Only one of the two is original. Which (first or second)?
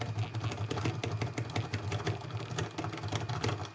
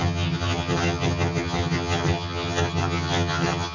first